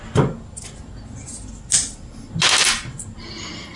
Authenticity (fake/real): real